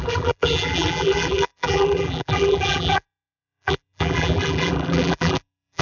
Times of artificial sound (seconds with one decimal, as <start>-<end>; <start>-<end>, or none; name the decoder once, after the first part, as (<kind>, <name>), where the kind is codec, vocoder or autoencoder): 0.0-5.8 (vocoder, BigVGAN v2)